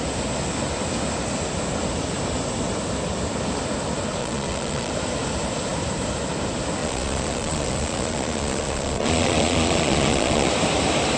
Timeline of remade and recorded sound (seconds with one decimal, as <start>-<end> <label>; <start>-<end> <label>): 0.0-4.2 recorded; 4.2-4.9 remade; 4.9-6.8 recorded; 6.8-10.5 remade; 10.5-11.2 recorded